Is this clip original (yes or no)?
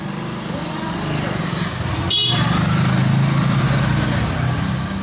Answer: yes